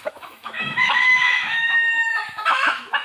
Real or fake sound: fake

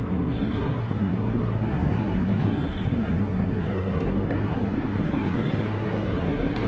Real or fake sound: fake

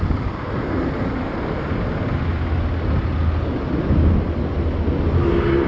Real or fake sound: real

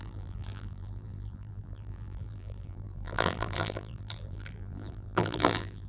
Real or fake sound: fake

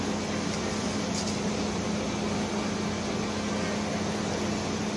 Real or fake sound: real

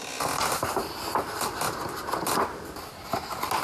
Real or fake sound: real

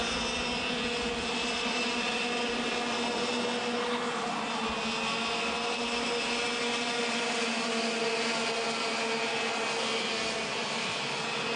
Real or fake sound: real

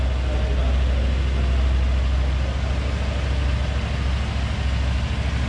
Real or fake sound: real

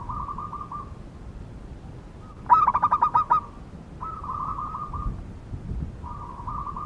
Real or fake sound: real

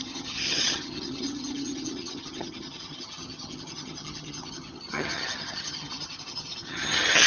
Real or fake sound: fake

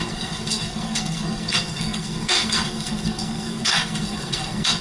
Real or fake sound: fake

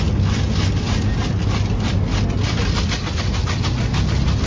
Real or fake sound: real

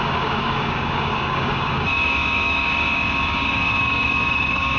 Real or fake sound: fake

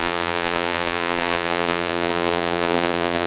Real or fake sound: fake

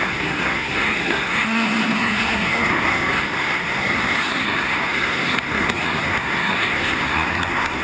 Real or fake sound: fake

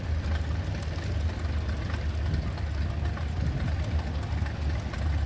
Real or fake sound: real